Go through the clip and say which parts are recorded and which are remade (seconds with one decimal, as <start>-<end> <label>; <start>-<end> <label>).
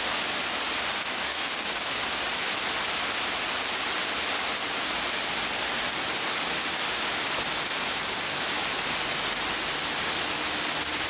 0.0-1.3 recorded; 1.3-1.9 remade; 1.9-11.1 recorded